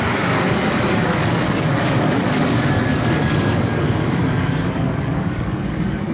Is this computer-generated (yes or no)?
yes